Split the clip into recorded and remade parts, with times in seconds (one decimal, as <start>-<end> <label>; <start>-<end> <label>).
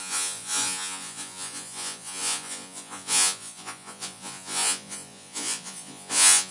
0.0-6.5 remade